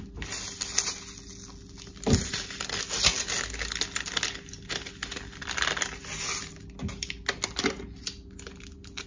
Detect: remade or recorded recorded